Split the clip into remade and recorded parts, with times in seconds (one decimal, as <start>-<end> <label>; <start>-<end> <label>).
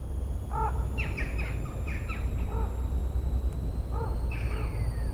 0.0-5.1 recorded